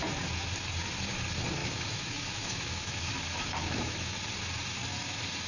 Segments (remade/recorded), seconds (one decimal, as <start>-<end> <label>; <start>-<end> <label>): 0.0-1.6 recorded; 1.6-3.1 remade; 3.1-3.6 recorded; 3.6-4.2 remade; 4.2-5.5 recorded